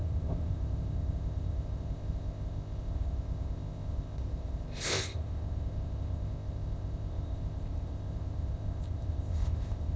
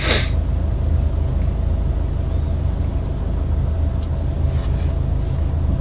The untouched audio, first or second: second